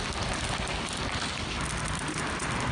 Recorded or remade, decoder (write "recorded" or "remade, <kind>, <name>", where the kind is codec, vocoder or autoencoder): recorded